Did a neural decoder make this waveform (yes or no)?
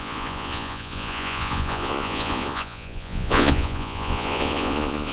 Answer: yes